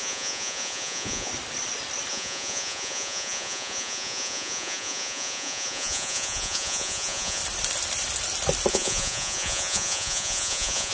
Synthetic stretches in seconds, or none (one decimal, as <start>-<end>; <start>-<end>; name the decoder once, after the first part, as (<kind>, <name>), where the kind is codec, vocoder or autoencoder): 0.0-1.3 (vocoder, Vocos); 2.1-7.4; 8.7-10.9

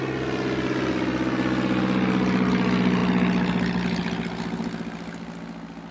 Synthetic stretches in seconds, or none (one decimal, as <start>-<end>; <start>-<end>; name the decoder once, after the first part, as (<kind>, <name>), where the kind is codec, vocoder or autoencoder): none

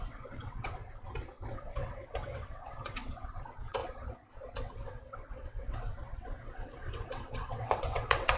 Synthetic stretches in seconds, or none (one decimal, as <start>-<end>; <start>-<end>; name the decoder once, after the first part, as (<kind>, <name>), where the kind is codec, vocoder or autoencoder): 0.0-0.8 (vocoder, WaveNeXt); 1.5-3.8; 4.6-8.4

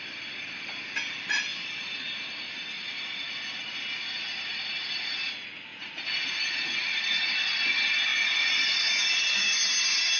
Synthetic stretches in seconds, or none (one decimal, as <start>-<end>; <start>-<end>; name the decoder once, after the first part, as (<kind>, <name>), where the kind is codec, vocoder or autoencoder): 5.7-7.2 (vocoder, Vocos)